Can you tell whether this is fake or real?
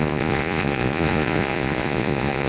fake